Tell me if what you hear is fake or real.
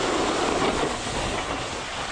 real